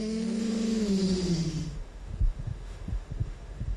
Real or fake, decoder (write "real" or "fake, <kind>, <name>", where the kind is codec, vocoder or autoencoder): fake, autoencoder, DAC-VAE